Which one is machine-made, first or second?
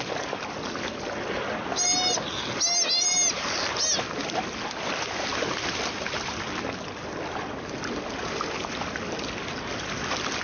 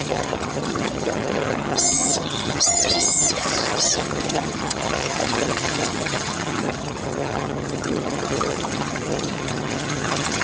second